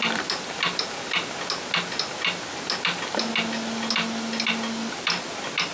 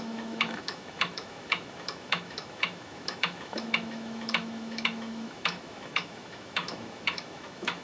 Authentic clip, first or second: first